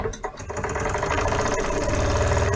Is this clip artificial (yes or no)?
no